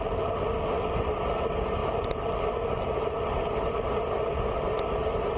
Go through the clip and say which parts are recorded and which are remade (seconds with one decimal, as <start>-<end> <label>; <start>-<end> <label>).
0.0-5.4 recorded